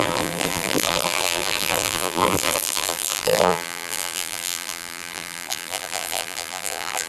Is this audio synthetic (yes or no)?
yes